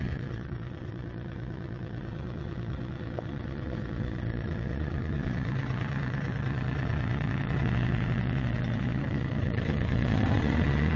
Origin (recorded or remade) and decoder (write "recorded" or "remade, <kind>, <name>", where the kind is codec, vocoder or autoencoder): remade, vocoder, WaveNeXt